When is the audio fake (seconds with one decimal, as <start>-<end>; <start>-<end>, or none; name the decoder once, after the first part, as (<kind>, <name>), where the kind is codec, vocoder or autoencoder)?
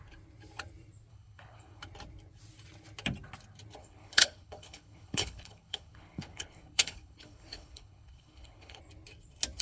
1.1-1.8 (codec, HILCodec); 3.8-8.8